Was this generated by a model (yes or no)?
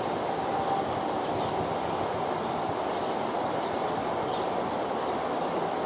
no